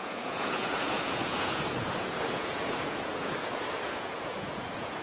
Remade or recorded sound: remade